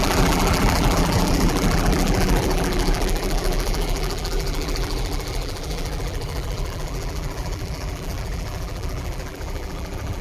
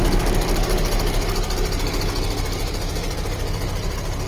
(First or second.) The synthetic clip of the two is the first